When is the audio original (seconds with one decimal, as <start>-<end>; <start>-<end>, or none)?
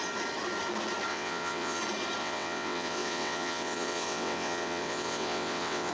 0.0-1.1; 1.8-2.2